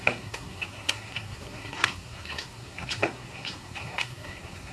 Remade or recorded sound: remade